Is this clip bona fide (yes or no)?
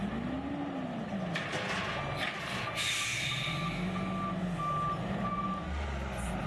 yes